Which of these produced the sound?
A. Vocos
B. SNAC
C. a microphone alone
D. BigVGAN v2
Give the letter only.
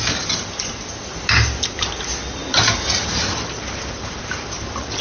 C